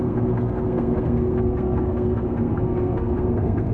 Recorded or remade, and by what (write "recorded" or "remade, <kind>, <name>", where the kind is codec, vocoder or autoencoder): remade, codec, SNAC